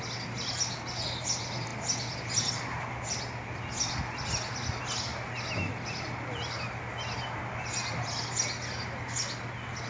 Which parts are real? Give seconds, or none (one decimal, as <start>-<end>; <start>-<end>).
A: 0.0-9.9

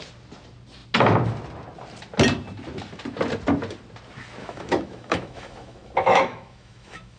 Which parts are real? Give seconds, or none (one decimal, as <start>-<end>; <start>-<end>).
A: 0.0-4.4

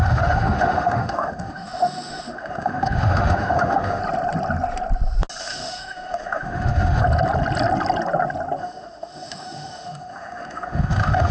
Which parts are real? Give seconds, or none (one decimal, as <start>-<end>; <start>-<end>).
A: 4.0-5.4; 7.0-8.6